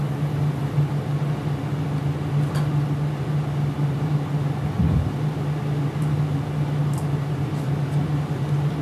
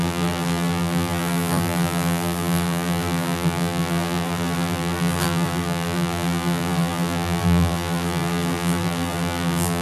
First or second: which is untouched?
first